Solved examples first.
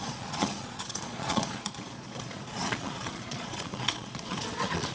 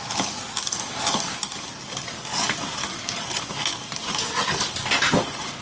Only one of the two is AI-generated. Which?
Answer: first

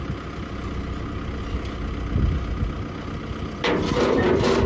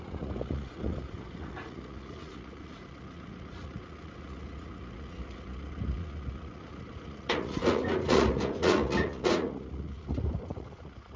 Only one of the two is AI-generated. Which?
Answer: second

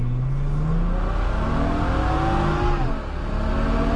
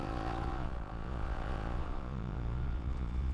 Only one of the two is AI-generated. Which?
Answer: second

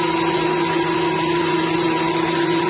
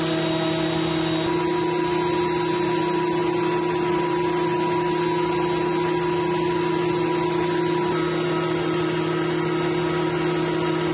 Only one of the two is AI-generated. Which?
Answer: first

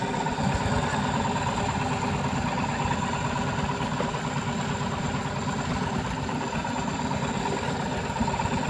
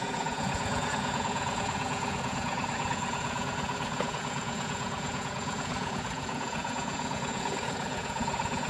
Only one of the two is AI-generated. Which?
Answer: second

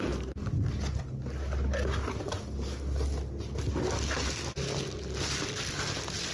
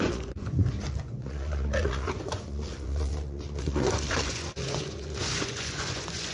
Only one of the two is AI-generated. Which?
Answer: second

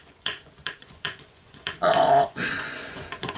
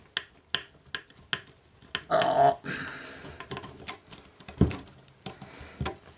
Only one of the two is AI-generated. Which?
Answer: first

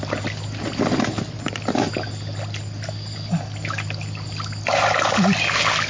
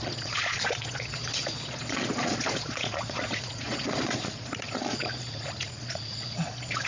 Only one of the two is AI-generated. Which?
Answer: second